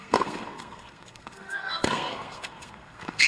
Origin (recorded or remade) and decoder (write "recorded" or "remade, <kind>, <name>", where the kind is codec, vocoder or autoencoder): remade, codec, SNAC